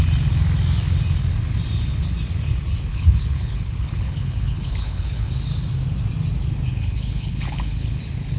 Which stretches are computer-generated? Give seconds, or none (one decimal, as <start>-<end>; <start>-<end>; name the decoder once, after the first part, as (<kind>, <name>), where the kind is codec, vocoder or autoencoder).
2.9-5.3 (codec, HILCodec); 6.7-8.0